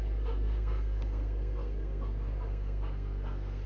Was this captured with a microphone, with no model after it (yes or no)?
no